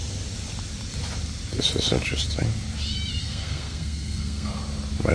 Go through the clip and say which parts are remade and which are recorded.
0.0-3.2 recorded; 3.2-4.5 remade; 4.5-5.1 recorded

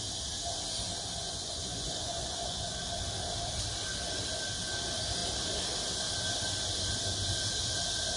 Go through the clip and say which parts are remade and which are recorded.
0.0-1.2 recorded; 1.2-2.8 remade; 2.8-8.2 recorded

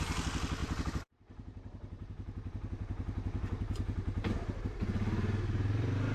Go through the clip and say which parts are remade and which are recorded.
0.0-0.6 recorded; 0.6-4.3 remade; 4.3-6.1 recorded

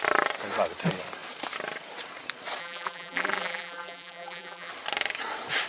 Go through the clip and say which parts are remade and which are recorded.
0.0-2.6 recorded; 2.6-4.7 remade; 4.7-5.7 recorded

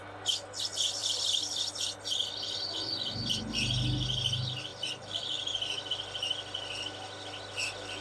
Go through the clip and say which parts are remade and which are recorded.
0.0-1.0 recorded; 1.0-1.7 remade; 1.7-4.7 recorded; 4.7-5.9 remade; 5.9-8.0 recorded

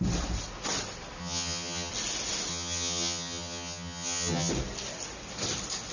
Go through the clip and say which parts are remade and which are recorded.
0.0-1.2 recorded; 1.2-1.9 remade; 1.9-2.5 recorded; 2.5-4.5 remade; 4.5-5.9 recorded

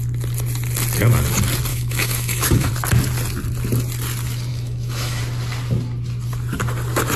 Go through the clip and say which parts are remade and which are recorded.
0.0-1.7 recorded; 1.7-2.7 remade; 2.7-4.5 recorded; 4.5-5.2 remade; 5.2-7.2 recorded